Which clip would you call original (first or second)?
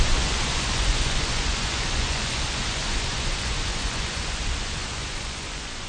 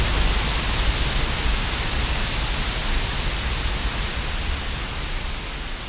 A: second